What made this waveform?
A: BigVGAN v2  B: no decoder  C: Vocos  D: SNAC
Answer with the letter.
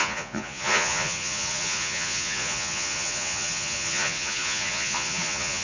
C